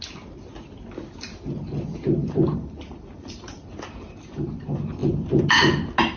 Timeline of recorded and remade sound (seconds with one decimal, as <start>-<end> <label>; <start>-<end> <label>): 0.0-2.2 recorded; 2.2-4.5 remade; 4.5-6.2 recorded